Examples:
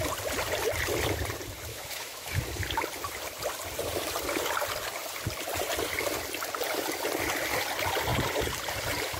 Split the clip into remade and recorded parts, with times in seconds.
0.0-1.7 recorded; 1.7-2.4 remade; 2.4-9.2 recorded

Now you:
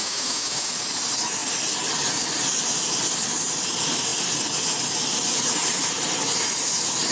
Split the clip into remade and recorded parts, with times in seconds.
0.0-0.7 remade; 0.7-7.1 recorded

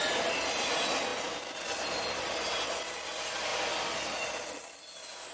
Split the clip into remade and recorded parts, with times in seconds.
0.0-5.3 recorded

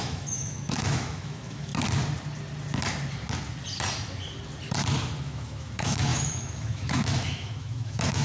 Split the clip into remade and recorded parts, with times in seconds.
0.0-1.7 remade; 1.7-5.2 recorded; 5.2-8.2 remade

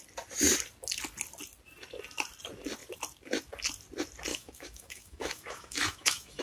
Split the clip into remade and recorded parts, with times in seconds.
0.0-4.3 recorded; 4.3-6.4 remade

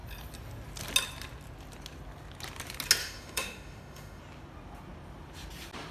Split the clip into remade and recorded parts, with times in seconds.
0.0-3.0 recorded; 3.0-4.2 remade; 4.2-5.9 recorded

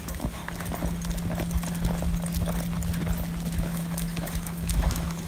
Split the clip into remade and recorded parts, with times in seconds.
0.0-0.4 remade; 0.4-3.6 recorded; 3.6-5.3 remade

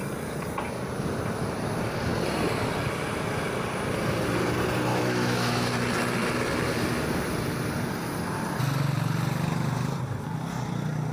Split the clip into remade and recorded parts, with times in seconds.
0.0-4.9 recorded; 4.9-5.7 remade; 5.7-11.1 recorded